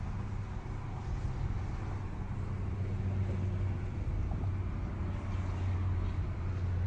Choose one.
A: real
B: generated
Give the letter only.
A